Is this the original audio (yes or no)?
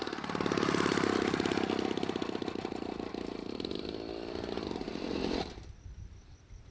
yes